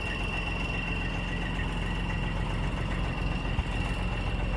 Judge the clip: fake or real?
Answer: real